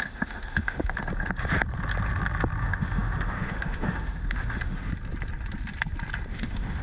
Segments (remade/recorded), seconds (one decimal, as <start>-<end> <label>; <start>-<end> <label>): 0.0-1.0 remade; 1.0-2.6 recorded; 2.6-4.9 remade; 4.9-6.3 recorded; 6.3-6.8 remade